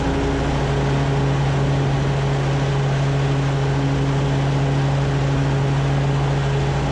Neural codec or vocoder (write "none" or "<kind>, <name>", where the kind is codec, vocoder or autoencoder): none